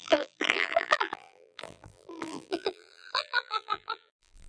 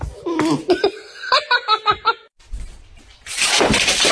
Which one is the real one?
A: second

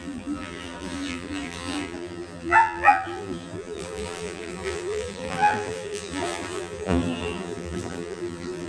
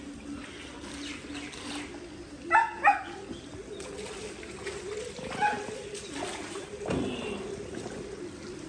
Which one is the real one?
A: second